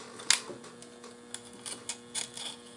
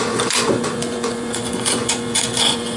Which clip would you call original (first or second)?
first